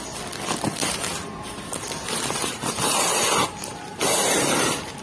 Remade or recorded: recorded